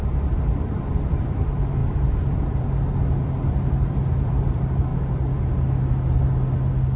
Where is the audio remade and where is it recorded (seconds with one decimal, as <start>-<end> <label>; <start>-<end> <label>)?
0.0-4.9 remade; 4.9-7.0 recorded